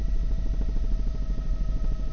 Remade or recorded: recorded